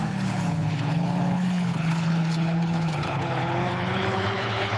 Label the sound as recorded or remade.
remade